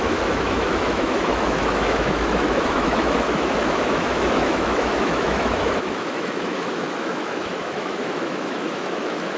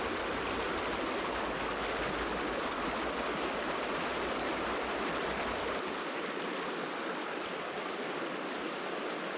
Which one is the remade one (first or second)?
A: first